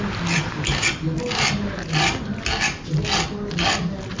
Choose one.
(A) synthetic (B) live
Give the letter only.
B